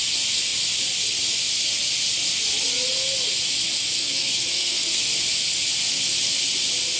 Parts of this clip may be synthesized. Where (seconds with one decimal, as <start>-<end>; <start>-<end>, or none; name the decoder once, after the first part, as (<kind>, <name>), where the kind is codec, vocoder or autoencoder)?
4.0-5.0 (codec, SNAC)